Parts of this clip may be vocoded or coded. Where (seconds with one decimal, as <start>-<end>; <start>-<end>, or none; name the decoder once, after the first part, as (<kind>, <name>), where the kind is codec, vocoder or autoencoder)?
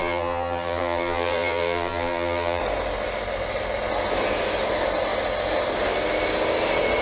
0.0-2.6 (vocoder, BigVGAN v2)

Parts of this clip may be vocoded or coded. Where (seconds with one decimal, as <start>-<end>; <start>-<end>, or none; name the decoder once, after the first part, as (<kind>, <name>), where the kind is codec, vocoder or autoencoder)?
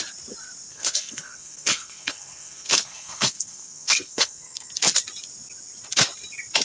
0.7-4.7 (codec, SNAC)